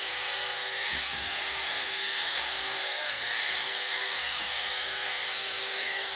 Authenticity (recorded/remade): remade